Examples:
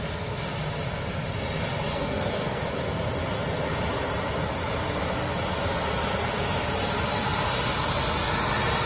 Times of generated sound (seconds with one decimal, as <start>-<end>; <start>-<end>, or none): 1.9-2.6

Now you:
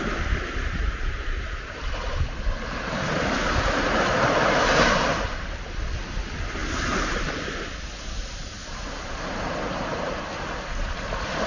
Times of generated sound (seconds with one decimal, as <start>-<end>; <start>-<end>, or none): none

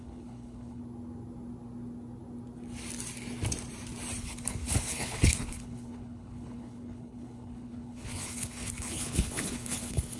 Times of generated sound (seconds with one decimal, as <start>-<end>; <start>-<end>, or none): 0.0-0.8; 4.2-10.2

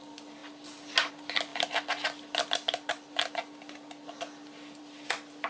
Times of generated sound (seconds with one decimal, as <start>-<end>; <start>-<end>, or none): none